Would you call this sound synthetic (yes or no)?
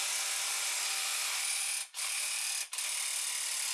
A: no